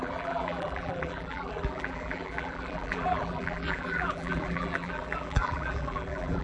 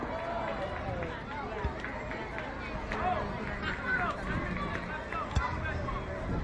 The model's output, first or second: first